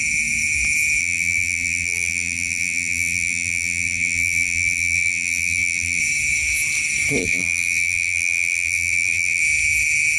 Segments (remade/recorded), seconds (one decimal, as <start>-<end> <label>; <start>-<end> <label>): 0.0-1.0 recorded; 1.0-6.0 remade; 6.0-7.2 recorded; 7.2-9.4 remade; 9.4-10.2 recorded